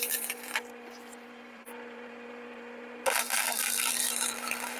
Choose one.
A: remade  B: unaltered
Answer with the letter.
A